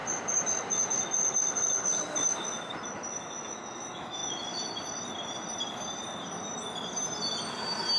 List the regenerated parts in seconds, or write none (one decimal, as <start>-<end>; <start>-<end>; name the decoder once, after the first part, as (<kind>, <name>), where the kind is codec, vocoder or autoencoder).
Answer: 3.1-4.2 (autoencoder, DAC-VAE)